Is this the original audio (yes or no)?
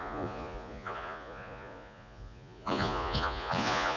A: no